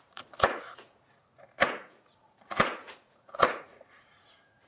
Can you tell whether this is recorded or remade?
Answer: remade